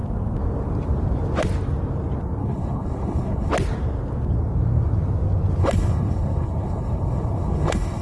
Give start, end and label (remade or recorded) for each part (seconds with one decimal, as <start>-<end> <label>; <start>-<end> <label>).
0.0-2.4 recorded; 2.4-3.5 remade; 3.5-5.6 recorded; 5.6-8.0 remade